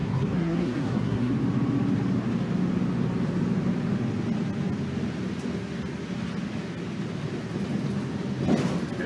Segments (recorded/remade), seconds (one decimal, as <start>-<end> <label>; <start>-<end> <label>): 0.0-1.3 remade; 1.3-9.1 recorded